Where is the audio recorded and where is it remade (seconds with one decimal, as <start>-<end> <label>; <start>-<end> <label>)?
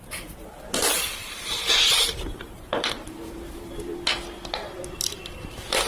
0.0-1.2 recorded; 1.2-4.0 remade; 4.0-5.9 recorded